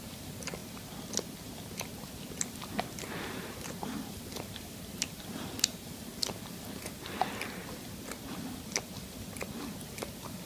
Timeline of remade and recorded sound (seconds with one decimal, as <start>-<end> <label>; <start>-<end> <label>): 0.0-10.5 recorded